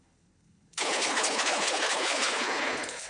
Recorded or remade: remade